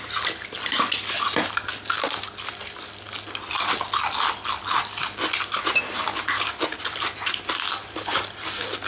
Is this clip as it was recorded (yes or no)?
yes